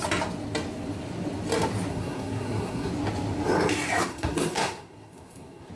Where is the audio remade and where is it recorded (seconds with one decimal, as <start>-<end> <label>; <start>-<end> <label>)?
0.0-1.9 recorded; 1.9-2.9 remade; 2.9-4.1 recorded; 4.1-5.7 remade